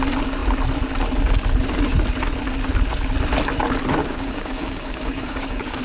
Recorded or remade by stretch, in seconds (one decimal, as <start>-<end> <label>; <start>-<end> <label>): 0.0-4.0 recorded; 4.0-5.8 remade